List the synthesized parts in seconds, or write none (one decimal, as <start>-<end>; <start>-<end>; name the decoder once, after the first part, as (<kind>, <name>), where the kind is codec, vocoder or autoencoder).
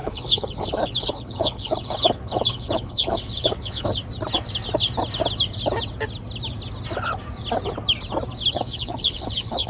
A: 0.0-4.0 (codec, HILCodec); 8.5-9.7